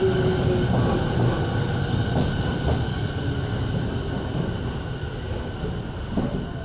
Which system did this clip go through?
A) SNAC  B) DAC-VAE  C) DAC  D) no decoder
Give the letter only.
D